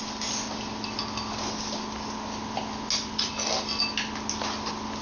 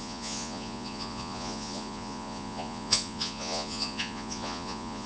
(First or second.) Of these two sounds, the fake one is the second